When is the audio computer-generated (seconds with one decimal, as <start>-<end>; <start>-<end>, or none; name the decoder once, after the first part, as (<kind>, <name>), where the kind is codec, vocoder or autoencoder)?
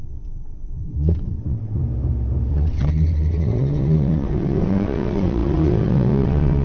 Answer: 0.0-1.8 (vocoder, WaveNeXt); 2.5-6.6